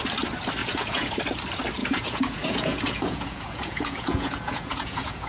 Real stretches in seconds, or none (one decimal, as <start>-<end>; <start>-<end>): 0.0-0.6; 1.2-1.8